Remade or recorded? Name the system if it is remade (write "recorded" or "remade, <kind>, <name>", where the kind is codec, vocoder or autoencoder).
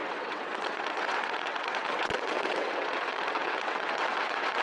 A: remade, vocoder, WaveNeXt